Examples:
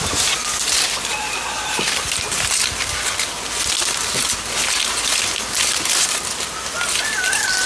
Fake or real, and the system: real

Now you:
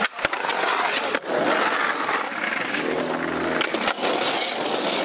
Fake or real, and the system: real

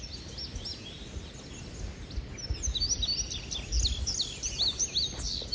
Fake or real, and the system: real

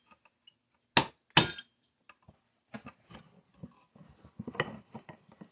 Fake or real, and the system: real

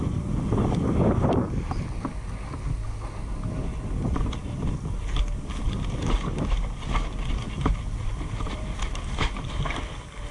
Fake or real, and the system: fake, vocoder, BigVGAN v2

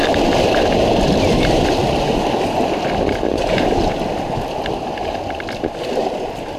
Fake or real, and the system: real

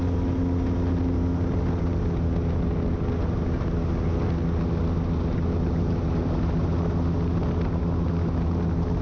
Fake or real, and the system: real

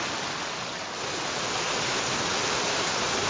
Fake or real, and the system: real